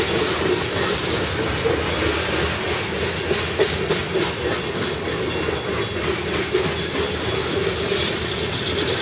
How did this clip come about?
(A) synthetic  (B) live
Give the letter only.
B